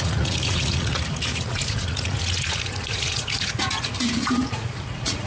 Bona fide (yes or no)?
no